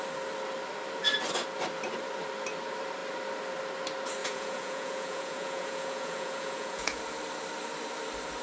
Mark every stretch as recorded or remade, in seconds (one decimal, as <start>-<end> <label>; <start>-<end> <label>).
0.0-4.2 recorded; 4.2-7.0 remade; 7.0-8.4 recorded